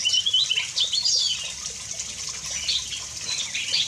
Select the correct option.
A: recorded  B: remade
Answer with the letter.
A